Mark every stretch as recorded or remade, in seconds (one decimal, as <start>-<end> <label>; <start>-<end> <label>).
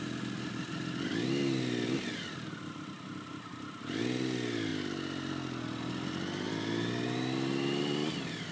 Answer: 0.0-8.5 recorded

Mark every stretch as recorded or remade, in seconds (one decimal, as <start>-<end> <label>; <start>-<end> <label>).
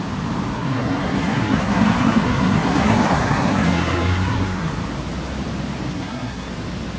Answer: 0.0-0.5 recorded; 0.5-4.7 remade; 4.7-5.9 recorded; 5.9-6.5 remade; 6.5-7.0 recorded